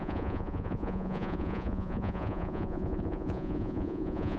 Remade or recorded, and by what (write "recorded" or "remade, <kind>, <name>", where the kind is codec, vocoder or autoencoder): remade, vocoder, Vocos